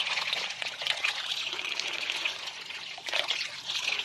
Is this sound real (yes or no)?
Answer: no